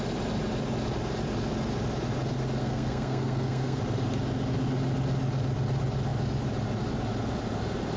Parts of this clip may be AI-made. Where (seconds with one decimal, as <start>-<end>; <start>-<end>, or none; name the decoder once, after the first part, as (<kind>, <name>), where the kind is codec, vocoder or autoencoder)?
2.6-3.8 (codec, SNAC)